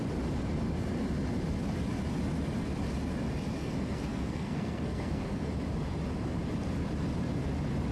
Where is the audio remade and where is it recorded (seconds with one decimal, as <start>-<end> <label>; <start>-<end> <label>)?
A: 0.0-3.6 recorded; 3.6-5.5 remade; 5.5-7.9 recorded